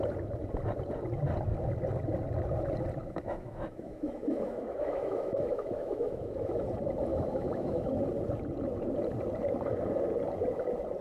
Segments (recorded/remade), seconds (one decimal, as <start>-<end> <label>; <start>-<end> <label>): 0.0-3.0 recorded; 3.0-6.6 remade; 6.6-7.1 recorded; 7.1-7.9 remade; 7.9-11.0 recorded

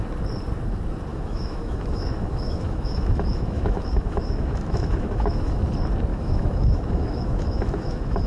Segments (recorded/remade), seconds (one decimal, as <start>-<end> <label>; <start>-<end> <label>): 0.0-1.1 recorded; 1.1-5.6 remade; 5.6-6.1 recorded; 6.1-8.3 remade

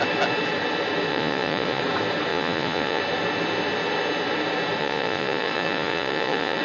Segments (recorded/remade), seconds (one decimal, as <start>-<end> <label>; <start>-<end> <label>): 0.0-1.1 recorded; 1.1-1.8 remade; 1.8-2.3 recorded; 2.3-3.0 remade; 3.0-4.8 recorded; 4.8-6.6 remade